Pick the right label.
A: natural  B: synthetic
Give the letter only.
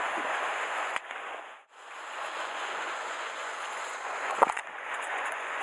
B